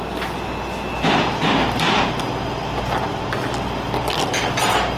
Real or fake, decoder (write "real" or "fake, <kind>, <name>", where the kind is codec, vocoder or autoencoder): real